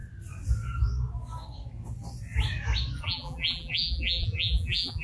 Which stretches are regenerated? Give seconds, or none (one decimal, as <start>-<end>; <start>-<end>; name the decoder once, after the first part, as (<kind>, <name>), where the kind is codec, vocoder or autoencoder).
3.0-5.0 (vocoder, BigVGAN v2)